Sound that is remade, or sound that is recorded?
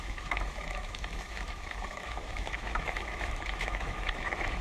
remade